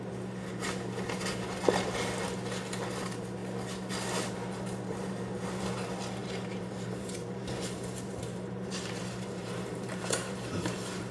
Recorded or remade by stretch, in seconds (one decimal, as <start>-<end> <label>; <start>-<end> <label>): 0.0-6.2 recorded; 6.2-11.1 remade